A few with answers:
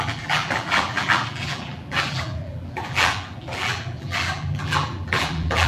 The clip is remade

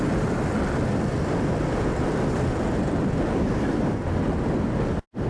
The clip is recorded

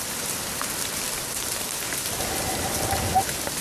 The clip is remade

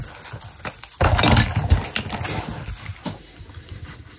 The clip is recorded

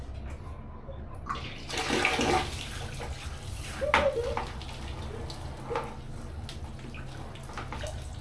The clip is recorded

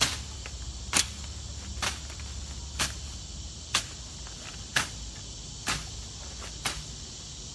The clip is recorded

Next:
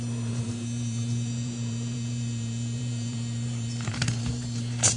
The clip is remade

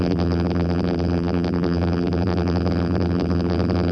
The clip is remade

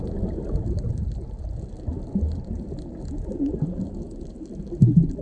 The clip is recorded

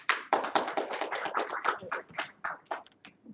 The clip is remade